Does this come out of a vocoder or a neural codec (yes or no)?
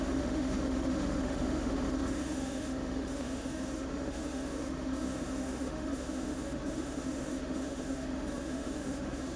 yes